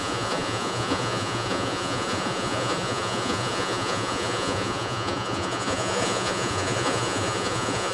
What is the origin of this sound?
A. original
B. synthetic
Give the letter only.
B